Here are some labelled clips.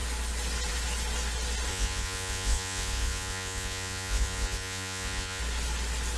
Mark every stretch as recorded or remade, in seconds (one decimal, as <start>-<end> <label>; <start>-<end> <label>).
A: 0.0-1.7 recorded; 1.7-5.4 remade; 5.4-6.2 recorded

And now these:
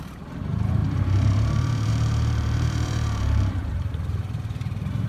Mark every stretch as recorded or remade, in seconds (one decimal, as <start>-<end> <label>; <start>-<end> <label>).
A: 0.0-5.1 remade

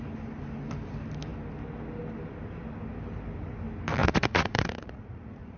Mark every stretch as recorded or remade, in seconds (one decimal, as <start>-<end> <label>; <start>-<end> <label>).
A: 0.0-4.0 recorded; 4.0-5.6 remade